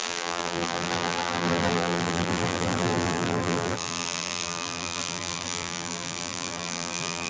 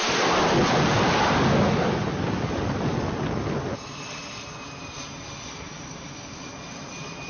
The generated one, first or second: first